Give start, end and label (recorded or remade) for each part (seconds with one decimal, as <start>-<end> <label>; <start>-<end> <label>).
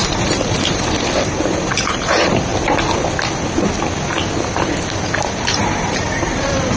0.0-2.5 remade; 2.5-5.0 recorded; 5.0-6.8 remade